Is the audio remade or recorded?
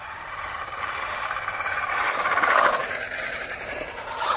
remade